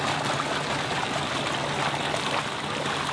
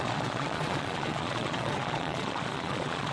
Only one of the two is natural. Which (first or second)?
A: first